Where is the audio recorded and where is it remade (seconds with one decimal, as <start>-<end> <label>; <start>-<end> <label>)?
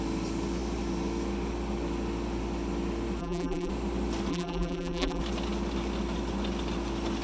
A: 0.0-3.2 recorded; 3.2-3.7 remade; 3.7-4.3 recorded; 4.3-5.2 remade; 5.2-7.2 recorded